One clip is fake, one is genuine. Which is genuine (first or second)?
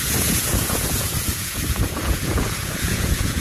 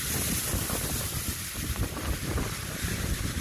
second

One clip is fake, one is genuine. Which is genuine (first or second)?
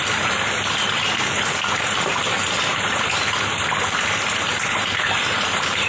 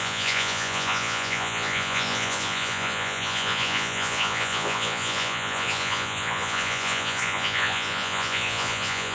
first